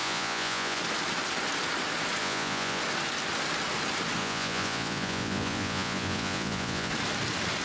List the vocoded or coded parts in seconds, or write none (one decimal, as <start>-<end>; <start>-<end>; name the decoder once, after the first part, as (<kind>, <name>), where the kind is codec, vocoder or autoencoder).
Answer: 0.0-0.8 (vocoder, Vocos); 2.2-2.8; 4.2-6.9